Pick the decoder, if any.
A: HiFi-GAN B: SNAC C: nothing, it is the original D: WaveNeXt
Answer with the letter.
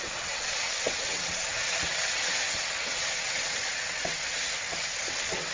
D